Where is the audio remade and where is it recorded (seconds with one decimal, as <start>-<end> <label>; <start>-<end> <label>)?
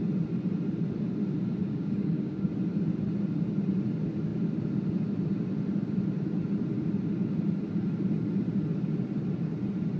0.0-1.6 recorded; 1.6-2.5 remade; 2.5-10.0 recorded